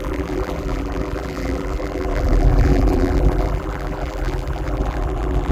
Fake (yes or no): yes